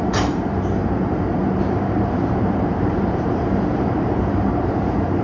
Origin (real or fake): fake